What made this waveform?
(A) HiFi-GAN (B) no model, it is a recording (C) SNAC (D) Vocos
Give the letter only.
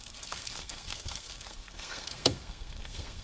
C